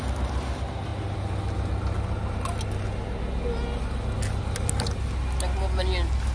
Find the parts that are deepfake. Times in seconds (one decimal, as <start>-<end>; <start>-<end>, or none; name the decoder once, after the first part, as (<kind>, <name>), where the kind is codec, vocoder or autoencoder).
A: none

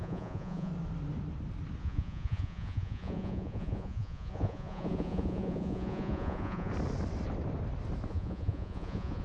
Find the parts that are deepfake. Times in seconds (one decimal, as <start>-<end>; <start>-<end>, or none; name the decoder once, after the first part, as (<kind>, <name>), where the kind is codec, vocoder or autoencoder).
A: 0.0-0.7 (vocoder, Vocos); 1.8-6.7; 8.1-9.2

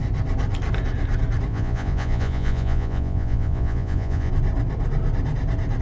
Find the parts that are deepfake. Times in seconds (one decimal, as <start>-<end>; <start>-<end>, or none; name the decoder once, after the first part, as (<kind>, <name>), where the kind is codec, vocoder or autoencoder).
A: 1.5-4.3 (vocoder, Vocos)